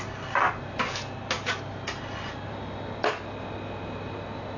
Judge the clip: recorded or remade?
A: recorded